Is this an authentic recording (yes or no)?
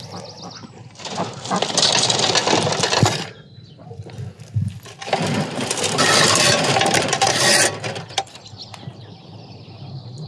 yes